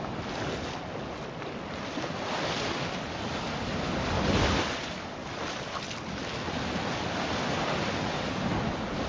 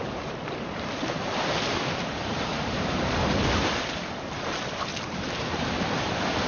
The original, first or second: first